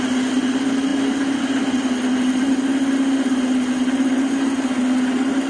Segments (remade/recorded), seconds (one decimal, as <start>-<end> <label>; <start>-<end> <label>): 0.0-5.5 recorded